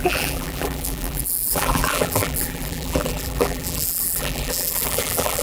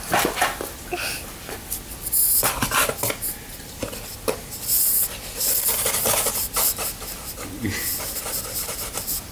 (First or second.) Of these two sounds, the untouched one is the second